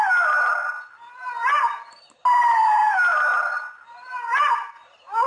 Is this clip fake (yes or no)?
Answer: no